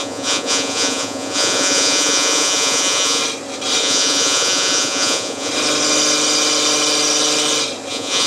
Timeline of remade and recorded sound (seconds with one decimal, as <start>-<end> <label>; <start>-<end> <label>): 0.0-3.2 remade; 3.2-3.8 recorded; 3.8-5.5 remade; 5.5-7.9 recorded; 7.9-8.3 remade